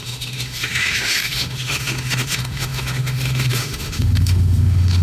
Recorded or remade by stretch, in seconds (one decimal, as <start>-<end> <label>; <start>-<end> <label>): 0.0-5.0 remade